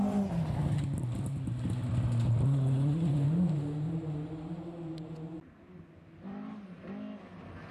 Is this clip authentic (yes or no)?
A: yes